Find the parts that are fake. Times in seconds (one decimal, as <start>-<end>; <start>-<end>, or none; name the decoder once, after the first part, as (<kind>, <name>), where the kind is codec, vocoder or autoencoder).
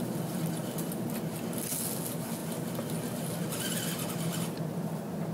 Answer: none